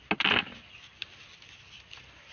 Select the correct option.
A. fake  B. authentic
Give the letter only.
B